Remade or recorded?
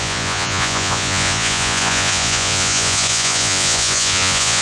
remade